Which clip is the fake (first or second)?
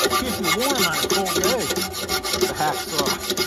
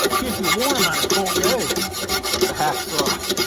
second